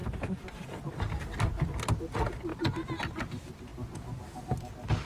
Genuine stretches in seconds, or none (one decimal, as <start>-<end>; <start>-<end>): 0.0-5.0